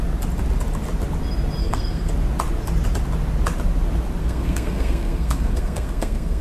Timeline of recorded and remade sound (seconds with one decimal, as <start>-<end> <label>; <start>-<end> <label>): 0.0-1.6 recorded; 1.6-2.1 remade; 2.1-4.2 recorded; 4.2-6.4 remade